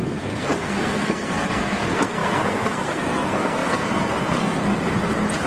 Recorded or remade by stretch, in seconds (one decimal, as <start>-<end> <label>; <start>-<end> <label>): 0.0-4.7 remade; 4.7-5.5 recorded